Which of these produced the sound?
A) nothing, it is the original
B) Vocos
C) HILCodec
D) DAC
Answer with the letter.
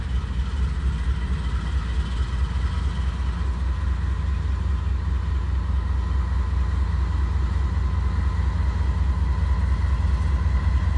A